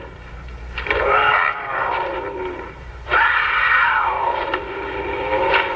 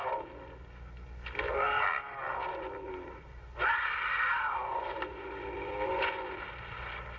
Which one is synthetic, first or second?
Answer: first